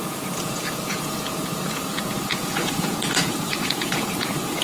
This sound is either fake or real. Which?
fake